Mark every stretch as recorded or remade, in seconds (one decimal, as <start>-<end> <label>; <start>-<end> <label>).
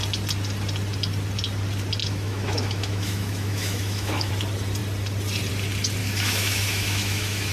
0.0-2.0 recorded; 2.0-4.3 remade; 4.3-6.0 recorded; 6.0-7.5 remade